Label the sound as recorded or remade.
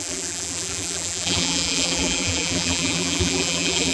remade